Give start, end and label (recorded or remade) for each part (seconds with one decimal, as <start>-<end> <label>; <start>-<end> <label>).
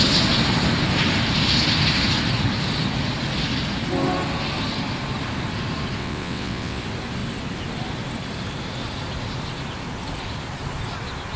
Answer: 0.0-6.0 recorded; 6.0-6.8 remade; 6.8-11.4 recorded